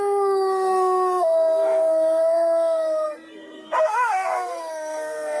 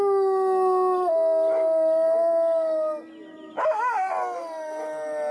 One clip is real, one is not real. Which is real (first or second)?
second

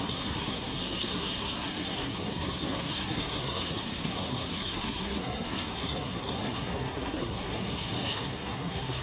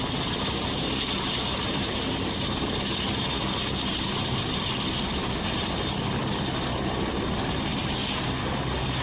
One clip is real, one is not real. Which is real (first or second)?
second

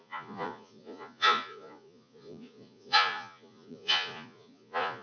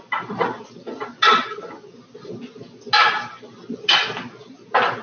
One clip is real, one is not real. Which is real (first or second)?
second